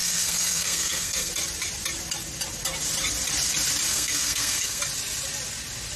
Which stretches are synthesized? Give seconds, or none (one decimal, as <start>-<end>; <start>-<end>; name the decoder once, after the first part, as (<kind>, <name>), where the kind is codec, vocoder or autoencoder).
0.0-1.3 (codec, SNAC); 3.9-4.8